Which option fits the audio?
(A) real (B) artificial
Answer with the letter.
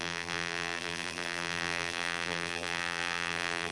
B